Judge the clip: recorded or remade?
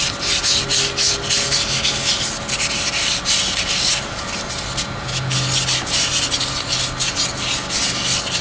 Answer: recorded